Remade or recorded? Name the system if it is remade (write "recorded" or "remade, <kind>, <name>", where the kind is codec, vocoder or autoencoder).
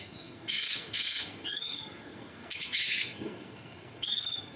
remade, codec, SNAC